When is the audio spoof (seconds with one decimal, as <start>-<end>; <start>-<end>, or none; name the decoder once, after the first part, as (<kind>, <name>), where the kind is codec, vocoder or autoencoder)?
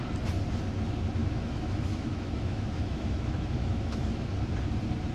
1.2-4.3 (autoencoder, DAC-VAE)